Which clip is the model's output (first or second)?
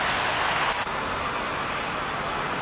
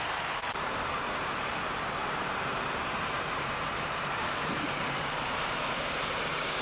second